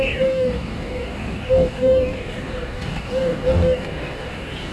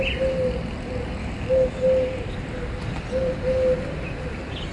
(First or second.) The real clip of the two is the second